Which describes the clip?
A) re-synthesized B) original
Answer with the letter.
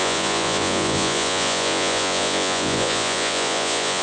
A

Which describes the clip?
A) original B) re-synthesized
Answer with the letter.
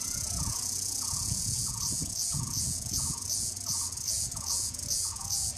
B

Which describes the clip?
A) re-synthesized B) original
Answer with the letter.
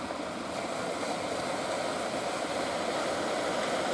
B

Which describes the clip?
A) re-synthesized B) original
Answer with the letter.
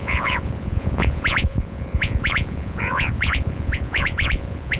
A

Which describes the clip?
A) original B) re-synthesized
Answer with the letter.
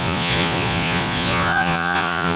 B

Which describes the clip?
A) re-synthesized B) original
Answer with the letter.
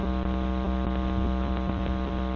B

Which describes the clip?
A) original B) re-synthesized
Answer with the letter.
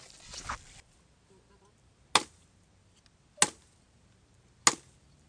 A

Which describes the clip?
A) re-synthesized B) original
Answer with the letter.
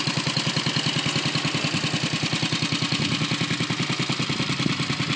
B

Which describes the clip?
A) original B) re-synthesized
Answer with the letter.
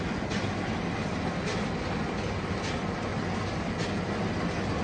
A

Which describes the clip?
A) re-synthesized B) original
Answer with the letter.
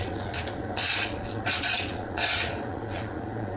A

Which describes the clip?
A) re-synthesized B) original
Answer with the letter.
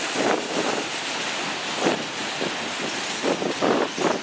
B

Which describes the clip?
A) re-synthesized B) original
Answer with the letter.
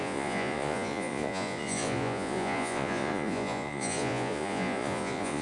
A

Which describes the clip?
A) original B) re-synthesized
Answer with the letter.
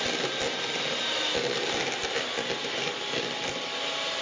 A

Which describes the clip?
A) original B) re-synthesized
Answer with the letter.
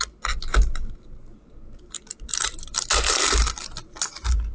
A